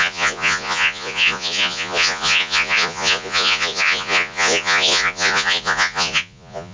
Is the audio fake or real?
fake